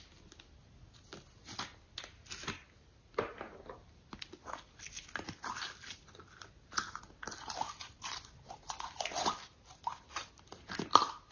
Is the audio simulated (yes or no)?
no